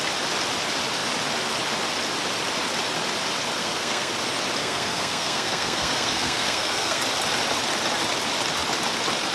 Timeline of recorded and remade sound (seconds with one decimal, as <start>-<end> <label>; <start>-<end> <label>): 0.0-3.6 recorded; 3.6-4.1 remade; 4.1-4.6 recorded; 4.6-7.0 remade; 7.0-9.3 recorded